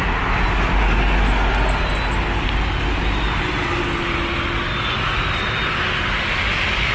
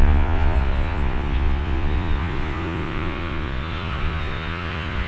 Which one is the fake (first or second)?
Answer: second